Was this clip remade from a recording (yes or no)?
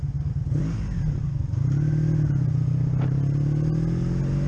no